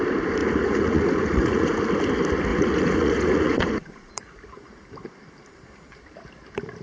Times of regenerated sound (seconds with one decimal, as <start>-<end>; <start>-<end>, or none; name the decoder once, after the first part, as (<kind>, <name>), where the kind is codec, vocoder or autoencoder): 0.4-1.8 (vocoder, Vocos); 2.5-4.1